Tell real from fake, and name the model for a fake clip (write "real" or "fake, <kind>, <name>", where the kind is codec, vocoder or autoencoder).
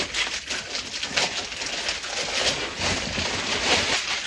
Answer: real